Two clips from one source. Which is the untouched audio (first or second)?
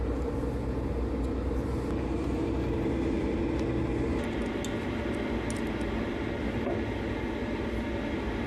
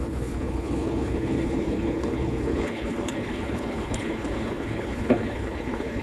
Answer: first